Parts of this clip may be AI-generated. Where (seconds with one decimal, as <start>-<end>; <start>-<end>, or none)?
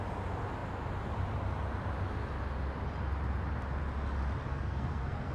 4.5-5.3